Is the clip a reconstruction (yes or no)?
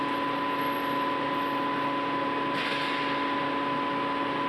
no